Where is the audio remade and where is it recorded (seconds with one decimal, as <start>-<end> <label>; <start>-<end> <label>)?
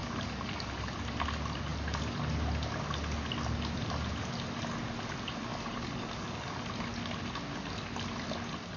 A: 0.0-0.9 remade; 0.9-5.5 recorded; 5.5-6.7 remade; 6.7-8.8 recorded